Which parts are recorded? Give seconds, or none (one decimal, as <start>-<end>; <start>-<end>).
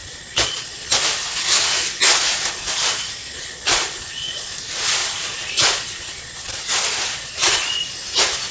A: 1.0-3.2; 4.5-5.0; 6.6-7.2; 7.8-8.5